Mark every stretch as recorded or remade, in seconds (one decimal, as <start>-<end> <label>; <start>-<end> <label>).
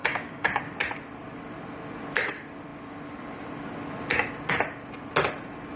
0.0-0.6 remade; 0.6-5.8 recorded